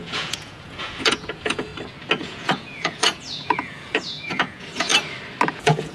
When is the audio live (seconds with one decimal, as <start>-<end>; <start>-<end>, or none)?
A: 1.7-2.2; 4.9-5.5